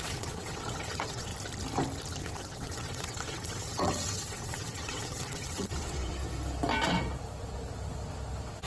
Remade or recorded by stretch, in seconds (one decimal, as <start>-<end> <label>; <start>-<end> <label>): 0.0-1.3 remade; 1.3-2.2 recorded; 2.2-6.2 remade; 6.2-8.7 recorded